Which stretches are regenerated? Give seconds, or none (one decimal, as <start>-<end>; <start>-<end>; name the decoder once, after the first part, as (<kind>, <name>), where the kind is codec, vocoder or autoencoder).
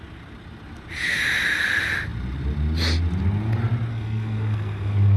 3.9-5.2 (codec, SNAC)